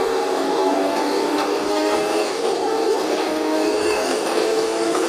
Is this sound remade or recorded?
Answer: remade